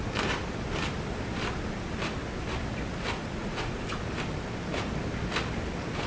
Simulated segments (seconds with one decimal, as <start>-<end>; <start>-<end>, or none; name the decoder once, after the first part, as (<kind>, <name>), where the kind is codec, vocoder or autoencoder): 3.4-4.0 (vocoder, Vocos)